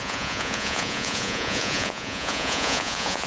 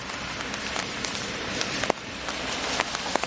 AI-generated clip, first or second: first